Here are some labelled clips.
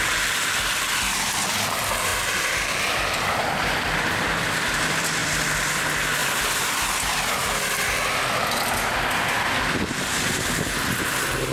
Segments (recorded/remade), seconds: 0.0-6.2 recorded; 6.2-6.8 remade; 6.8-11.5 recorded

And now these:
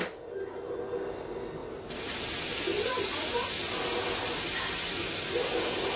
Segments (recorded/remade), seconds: 0.0-6.0 recorded

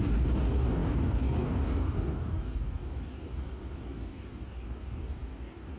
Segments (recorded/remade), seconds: 0.0-5.8 remade

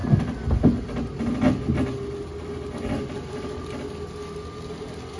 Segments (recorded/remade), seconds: 0.0-5.2 recorded